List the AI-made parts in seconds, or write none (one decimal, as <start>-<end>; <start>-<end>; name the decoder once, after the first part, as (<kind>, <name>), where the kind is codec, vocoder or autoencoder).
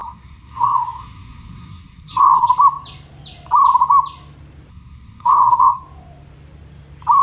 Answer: 0.0-2.5 (codec, SNAC); 4.7-5.8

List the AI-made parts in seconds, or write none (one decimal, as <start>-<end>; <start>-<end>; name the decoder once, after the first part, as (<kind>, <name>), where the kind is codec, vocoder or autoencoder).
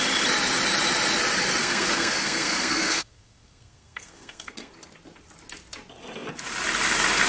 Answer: 1.6-4.7 (codec, SNAC)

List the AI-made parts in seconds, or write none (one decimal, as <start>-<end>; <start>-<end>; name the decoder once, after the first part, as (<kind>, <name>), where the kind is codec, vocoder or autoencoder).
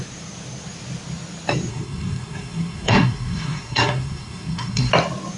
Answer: 1.7-4.9 (codec, SNAC)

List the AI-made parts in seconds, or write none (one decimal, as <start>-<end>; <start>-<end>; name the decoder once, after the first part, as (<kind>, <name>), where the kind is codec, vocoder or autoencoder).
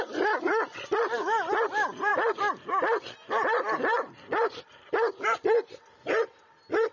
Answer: none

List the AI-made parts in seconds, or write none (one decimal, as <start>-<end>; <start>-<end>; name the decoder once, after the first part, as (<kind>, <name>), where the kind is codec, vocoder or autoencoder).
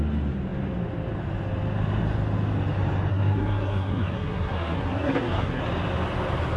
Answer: 3.1-5.6 (codec, SNAC)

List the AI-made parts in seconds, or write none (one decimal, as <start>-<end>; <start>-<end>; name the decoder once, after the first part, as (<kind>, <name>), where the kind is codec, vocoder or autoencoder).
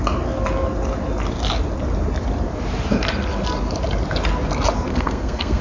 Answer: 4.9-5.6 (codec, SNAC)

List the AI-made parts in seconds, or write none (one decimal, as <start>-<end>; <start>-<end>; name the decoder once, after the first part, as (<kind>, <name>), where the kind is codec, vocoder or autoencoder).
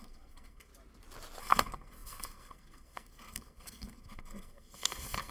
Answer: 0.0-0.7 (codec, SNAC); 1.4-5.3